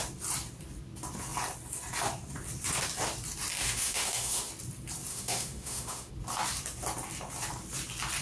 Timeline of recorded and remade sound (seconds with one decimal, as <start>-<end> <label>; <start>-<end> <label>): 0.0-3.6 recorded; 3.6-4.5 remade; 4.5-5.1 recorded; 5.1-6.1 remade; 6.1-8.2 recorded